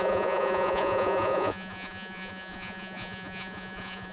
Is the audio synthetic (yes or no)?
yes